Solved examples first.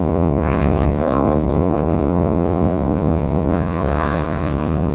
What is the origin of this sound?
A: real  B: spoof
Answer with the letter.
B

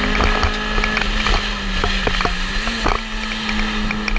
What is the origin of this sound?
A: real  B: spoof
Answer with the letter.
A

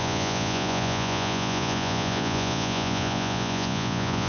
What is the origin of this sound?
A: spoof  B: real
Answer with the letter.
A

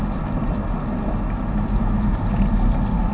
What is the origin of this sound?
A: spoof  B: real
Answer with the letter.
B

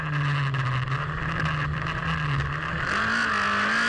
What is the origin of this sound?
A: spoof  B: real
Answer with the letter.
B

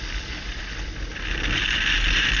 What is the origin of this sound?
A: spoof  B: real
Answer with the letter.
B